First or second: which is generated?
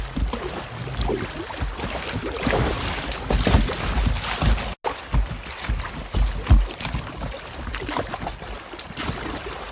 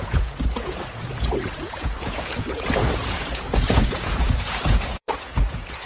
second